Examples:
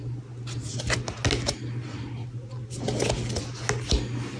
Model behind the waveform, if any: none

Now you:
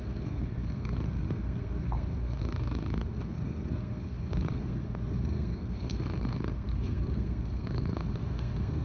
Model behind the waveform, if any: codec, SNAC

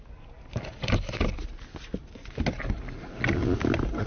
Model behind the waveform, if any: none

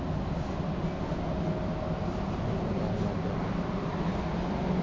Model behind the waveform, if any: none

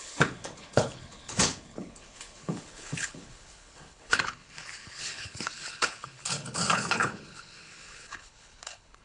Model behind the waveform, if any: codec, HILCodec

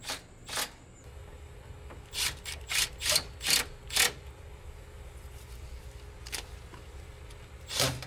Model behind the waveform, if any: none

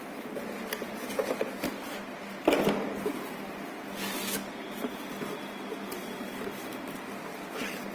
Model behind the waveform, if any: none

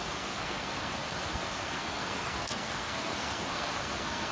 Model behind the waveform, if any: codec, SNAC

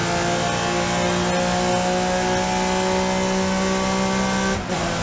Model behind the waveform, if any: none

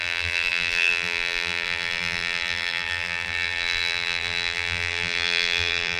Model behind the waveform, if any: vocoder, BigVGAN v2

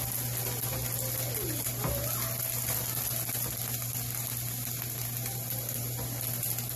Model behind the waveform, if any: none